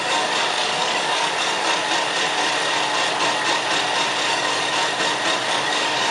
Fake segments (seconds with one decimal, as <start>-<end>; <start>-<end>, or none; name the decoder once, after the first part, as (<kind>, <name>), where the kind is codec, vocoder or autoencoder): 0.0-1.7 (codec, DAC); 4.3-4.7; 5.4-6.1